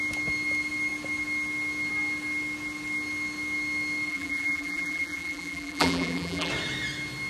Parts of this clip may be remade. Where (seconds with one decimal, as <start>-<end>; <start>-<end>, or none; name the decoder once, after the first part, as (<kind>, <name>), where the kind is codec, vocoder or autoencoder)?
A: 4.1-6.5 (vocoder, BigVGAN v2)

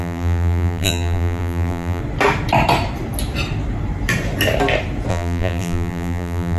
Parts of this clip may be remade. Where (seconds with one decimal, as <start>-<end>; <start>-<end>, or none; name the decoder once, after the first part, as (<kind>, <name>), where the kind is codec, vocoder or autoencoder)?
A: 0.0-2.0 (vocoder, BigVGAN v2); 5.1-6.6

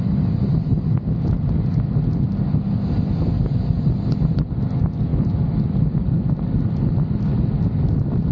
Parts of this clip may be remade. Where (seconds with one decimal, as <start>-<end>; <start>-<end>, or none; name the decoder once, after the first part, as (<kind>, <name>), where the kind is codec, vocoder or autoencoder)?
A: 5.1-6.3 (vocoder, BigVGAN v2)

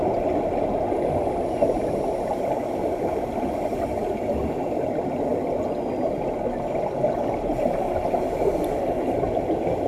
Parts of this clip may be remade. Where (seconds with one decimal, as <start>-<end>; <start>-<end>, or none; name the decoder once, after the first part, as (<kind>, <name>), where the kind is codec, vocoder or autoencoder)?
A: none

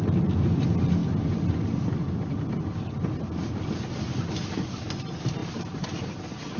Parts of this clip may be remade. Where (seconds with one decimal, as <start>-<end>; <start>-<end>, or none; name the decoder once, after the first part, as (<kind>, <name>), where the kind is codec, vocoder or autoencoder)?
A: 5.4-6.0 (vocoder, BigVGAN v2)

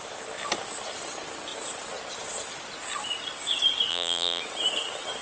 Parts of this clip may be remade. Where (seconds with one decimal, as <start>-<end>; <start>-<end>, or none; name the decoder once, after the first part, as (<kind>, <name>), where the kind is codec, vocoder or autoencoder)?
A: 3.9-4.4 (vocoder, BigVGAN v2)

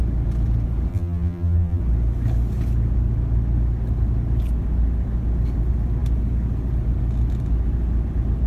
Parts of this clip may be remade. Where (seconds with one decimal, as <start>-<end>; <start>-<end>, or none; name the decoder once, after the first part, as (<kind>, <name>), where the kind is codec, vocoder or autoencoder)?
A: 0.9-1.8 (vocoder, BigVGAN v2)